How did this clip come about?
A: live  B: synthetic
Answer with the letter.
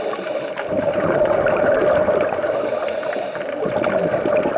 A